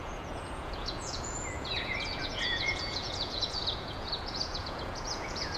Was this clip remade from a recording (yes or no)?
yes